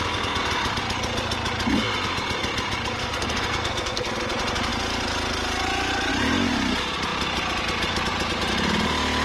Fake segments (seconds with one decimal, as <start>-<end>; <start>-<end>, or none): 3.0-4.0